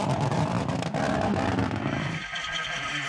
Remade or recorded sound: recorded